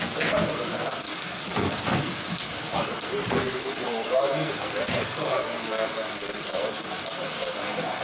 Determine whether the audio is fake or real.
fake